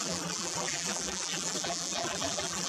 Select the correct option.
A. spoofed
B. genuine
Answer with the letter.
A